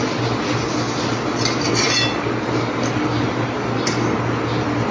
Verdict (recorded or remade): recorded